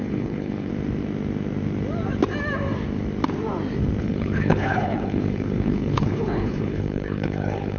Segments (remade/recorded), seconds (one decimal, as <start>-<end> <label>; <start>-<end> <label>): 0.0-0.7 remade; 0.7-4.0 recorded; 4.0-7.8 remade